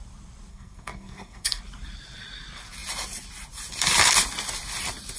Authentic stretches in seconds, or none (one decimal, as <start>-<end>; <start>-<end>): 0.0-0.5; 1.6-5.2

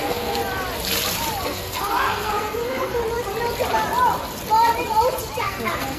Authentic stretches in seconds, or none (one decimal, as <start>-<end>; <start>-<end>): 0.4-1.4; 3.0-5.4

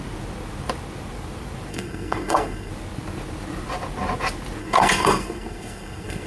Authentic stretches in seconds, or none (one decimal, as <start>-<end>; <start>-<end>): 0.0-1.7; 2.7-4.6

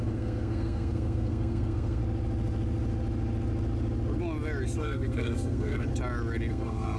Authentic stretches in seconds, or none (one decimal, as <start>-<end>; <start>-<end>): 2.0-4.8; 5.9-6.5

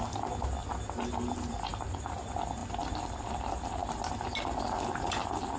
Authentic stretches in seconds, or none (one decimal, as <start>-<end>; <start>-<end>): 0.0-5.6

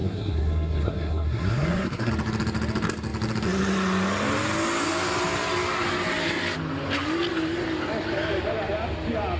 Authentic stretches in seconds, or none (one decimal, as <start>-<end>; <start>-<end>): 2.1-9.4

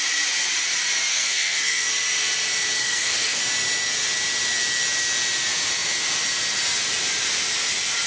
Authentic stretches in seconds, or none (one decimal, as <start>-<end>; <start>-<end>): 0.0-1.1; 1.9-2.8; 3.4-8.1